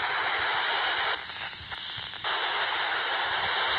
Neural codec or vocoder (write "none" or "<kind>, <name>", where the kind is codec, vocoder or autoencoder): none